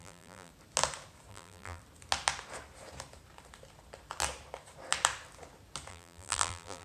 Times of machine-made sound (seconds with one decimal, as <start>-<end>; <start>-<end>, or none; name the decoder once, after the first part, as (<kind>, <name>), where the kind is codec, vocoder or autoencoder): 0.0-0.5 (vocoder, BigVGAN v2); 1.3-1.8; 5.9-6.8